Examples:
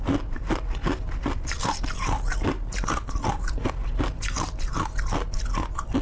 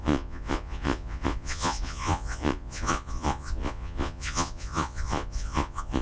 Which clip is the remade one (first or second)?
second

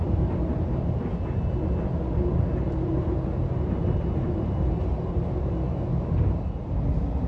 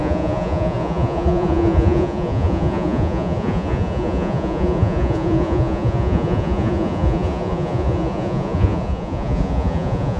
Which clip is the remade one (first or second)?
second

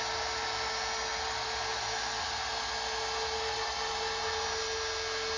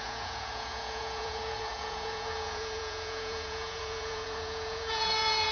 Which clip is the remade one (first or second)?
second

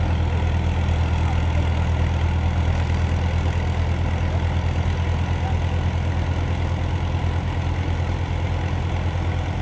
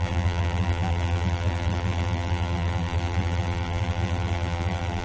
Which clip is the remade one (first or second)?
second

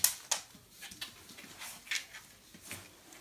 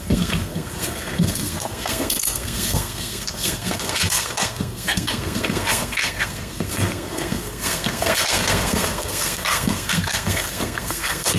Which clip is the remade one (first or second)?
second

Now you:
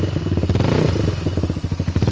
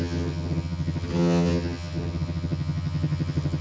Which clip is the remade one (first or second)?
second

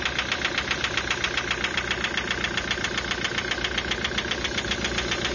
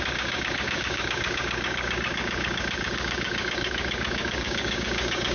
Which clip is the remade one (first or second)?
second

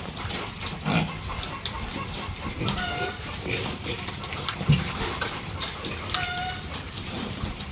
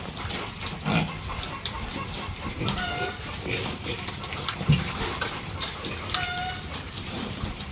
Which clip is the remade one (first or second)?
first